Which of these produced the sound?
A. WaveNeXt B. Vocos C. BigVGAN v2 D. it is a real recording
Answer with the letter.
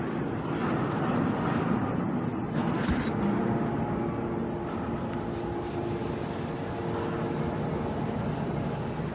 D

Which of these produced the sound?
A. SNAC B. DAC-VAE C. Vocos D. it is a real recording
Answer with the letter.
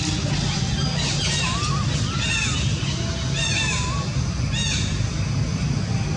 D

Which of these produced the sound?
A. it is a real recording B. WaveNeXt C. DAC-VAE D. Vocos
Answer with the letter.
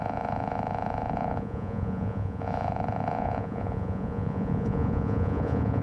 D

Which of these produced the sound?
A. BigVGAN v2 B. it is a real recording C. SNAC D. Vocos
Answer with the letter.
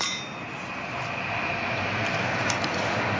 B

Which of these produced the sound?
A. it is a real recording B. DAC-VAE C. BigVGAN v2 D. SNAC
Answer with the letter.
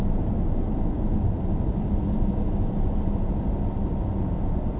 A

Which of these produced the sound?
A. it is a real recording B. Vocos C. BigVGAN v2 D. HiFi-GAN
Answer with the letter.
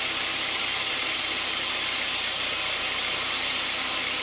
A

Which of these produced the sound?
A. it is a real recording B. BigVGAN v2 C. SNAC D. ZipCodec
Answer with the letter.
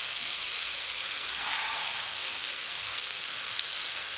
C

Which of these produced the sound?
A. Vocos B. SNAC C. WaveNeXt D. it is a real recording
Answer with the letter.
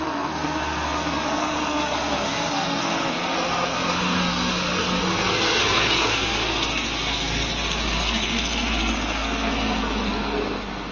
B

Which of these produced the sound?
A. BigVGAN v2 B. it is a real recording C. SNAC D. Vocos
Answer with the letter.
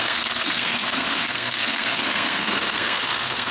C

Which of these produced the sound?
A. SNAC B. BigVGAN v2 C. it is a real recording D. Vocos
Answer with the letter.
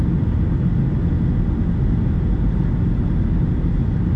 C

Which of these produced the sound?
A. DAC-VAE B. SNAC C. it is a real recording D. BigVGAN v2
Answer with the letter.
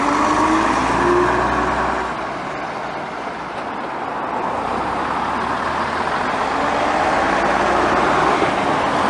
C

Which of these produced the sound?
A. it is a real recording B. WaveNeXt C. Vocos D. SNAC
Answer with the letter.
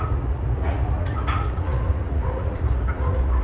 C